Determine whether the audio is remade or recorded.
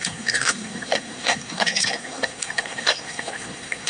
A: remade